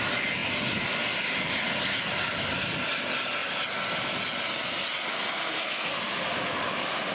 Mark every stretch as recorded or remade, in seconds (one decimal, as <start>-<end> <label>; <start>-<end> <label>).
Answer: 0.0-5.1 recorded; 5.1-6.0 remade; 6.0-7.1 recorded

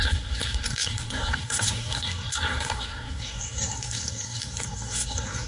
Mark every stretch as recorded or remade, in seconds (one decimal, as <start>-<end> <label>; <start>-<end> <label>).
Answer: 0.0-5.5 remade

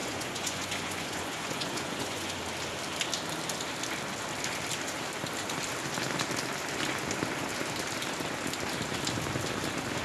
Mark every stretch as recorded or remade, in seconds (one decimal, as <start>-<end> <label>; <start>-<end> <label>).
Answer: 0.0-2.4 remade; 2.4-10.0 recorded

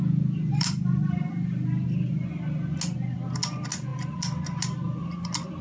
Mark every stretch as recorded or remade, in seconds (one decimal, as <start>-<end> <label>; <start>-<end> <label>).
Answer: 0.0-0.5 recorded; 0.5-1.3 remade; 1.3-5.6 recorded

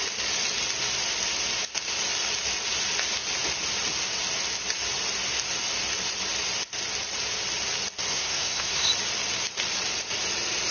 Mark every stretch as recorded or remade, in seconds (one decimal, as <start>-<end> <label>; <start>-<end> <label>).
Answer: 0.0-8.1 recorded; 8.1-8.9 remade; 8.9-10.7 recorded

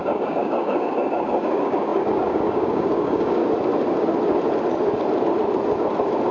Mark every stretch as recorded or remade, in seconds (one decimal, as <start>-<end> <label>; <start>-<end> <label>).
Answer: 0.0-3.4 remade; 3.4-6.3 recorded

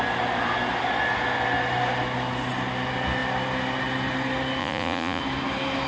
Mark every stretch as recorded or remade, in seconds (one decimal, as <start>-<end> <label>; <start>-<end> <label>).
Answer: 0.0-4.6 recorded; 4.6-5.2 remade; 5.2-5.9 recorded